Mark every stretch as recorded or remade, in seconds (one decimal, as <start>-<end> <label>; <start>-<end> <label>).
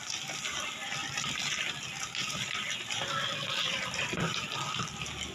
0.0-1.0 recorded; 1.0-4.0 remade; 4.0-5.3 recorded